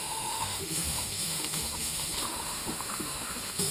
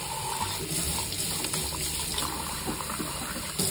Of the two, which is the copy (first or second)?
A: first